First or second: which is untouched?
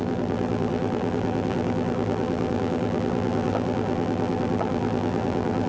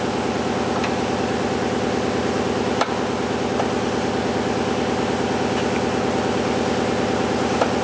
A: second